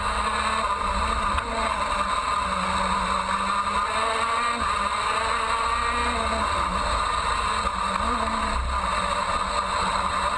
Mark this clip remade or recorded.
recorded